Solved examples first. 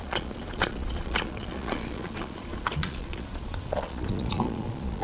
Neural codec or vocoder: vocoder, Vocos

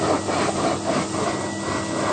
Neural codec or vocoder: none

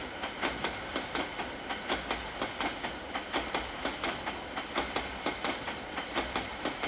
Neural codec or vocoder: none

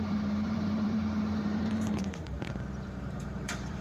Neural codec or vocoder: vocoder, BigVGAN v2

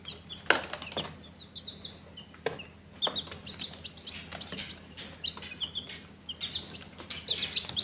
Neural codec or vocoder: none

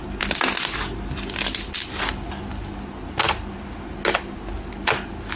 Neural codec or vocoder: none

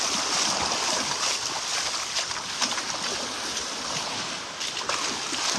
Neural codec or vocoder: none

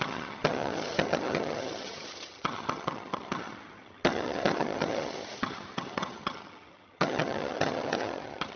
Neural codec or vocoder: vocoder, HiFi-GAN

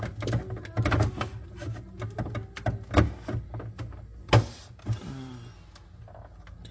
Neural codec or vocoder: none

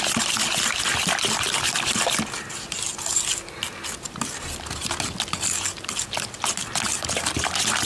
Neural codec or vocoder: none